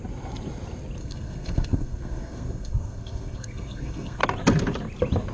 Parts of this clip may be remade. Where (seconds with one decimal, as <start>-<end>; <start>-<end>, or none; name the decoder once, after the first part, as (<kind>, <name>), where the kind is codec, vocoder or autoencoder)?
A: 1.0-4.2 (codec, SNAC)